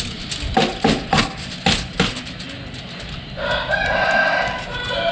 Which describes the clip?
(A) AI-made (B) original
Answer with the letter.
B